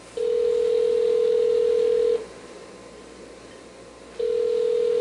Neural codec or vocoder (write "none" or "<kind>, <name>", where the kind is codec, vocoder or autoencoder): none